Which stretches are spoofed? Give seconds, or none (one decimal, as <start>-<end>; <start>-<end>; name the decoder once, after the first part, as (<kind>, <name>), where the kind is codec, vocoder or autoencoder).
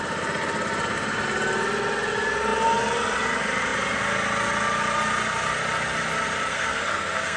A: 6.5-7.4 (codec, SNAC)